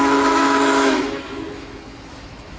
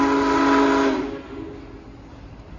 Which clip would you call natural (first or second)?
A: second